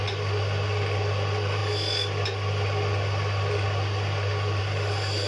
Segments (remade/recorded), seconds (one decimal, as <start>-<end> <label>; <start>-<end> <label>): 0.0-5.3 recorded